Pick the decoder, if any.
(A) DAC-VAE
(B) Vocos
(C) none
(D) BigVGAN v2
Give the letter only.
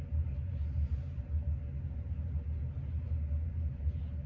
C